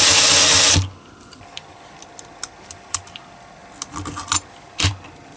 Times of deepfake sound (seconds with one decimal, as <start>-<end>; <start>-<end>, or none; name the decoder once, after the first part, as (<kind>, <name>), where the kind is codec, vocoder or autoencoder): none